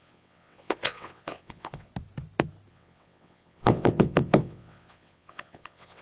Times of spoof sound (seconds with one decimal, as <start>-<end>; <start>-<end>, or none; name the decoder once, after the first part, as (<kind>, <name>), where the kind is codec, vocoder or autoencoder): 0.0-1.9 (vocoder, WaveNeXt); 2.7-6.0